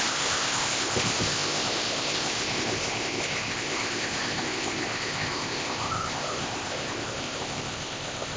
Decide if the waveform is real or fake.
fake